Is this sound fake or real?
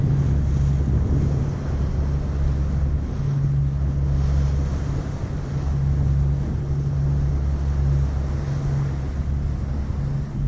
real